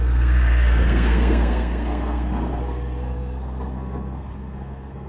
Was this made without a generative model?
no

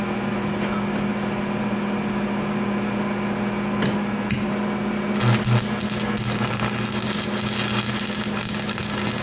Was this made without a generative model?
yes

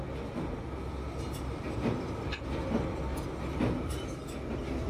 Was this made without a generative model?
yes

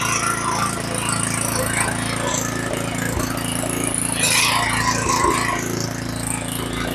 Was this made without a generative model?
yes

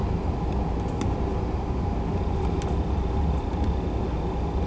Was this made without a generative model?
yes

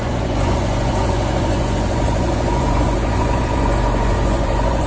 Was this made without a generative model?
no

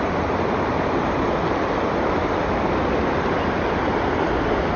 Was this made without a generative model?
yes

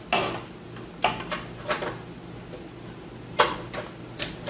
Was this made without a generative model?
no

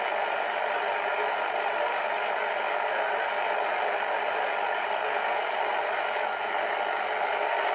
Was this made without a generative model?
yes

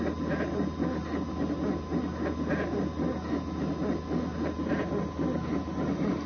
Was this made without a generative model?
yes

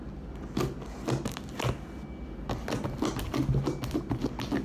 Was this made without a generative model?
yes